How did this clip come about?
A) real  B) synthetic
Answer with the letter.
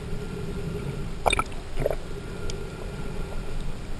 A